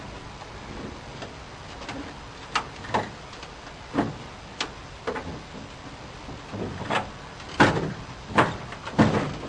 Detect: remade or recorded recorded